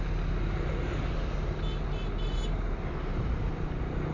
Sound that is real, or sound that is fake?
real